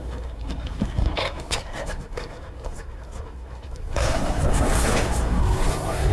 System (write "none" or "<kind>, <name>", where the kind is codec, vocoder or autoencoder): codec, SNAC